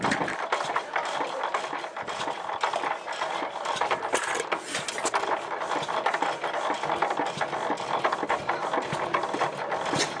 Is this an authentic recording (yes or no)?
yes